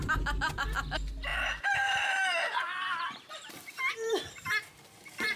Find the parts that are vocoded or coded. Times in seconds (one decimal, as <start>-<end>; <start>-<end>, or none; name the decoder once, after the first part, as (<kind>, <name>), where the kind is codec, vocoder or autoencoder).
1.3-4.5 (vocoder, BigVGAN v2)